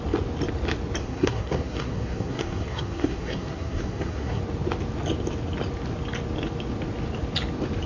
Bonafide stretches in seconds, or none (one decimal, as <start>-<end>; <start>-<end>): 0.0-1.0; 4.4-7.9